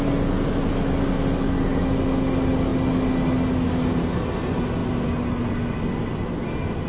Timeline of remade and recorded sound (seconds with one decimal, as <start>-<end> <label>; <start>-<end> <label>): 0.0-6.9 recorded